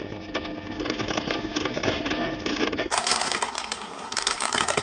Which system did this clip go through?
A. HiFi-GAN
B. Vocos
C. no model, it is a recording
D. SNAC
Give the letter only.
D